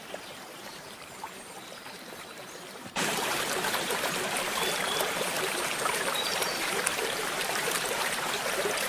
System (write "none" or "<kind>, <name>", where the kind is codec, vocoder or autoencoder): vocoder, BigVGAN v2